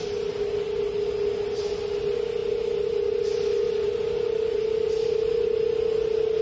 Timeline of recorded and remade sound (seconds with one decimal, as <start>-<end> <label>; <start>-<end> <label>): 0.0-6.4 recorded